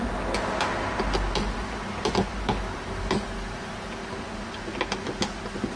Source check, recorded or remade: recorded